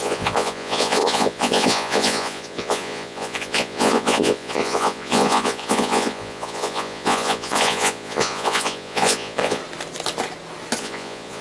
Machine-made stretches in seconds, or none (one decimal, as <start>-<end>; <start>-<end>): 0.0-9.6; 10.8-11.4